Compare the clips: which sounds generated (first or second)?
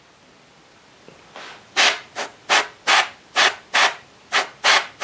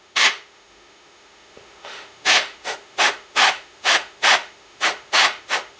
second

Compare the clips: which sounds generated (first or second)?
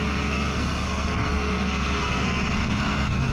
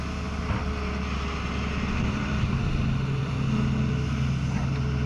first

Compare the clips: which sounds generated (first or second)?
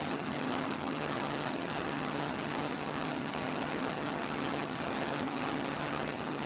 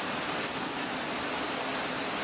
first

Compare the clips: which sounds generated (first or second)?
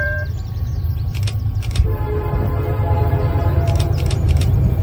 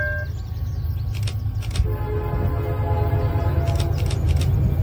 first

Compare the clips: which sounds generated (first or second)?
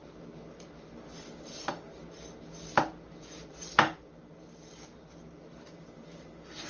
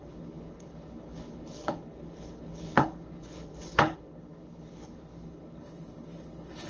second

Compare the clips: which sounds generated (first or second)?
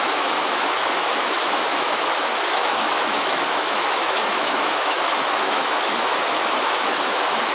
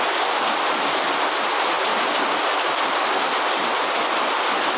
first